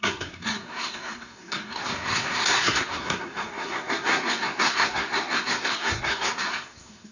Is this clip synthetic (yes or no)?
yes